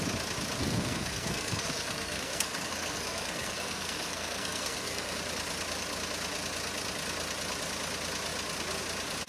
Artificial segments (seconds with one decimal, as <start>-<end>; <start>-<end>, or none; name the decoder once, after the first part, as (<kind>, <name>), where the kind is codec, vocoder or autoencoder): 0.6-5.2 (codec, SNAC)